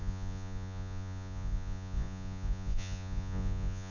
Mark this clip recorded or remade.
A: remade